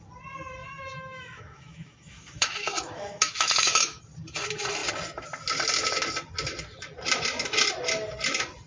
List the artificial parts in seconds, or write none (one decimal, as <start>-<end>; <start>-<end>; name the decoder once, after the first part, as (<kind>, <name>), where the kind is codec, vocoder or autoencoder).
0.6-4.0 (autoencoder, DAC-VAE)